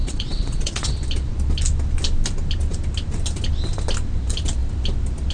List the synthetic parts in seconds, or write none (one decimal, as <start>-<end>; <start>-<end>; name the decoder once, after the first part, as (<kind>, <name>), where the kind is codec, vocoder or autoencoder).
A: 0.0-0.9 (vocoder, Vocos)